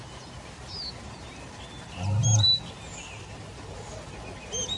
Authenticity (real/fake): real